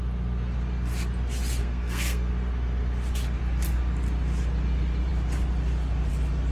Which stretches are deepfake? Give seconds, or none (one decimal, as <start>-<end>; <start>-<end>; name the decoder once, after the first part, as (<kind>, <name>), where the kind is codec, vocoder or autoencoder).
1.6-2.3 (codec, SNAC)